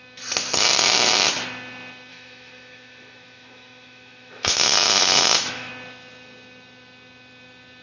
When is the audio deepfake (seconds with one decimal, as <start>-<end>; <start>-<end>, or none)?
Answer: 2.1-5.7